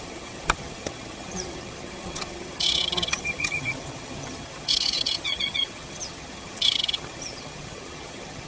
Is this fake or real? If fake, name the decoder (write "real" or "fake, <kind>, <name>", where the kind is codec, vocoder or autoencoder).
fake, vocoder, HiFi-GAN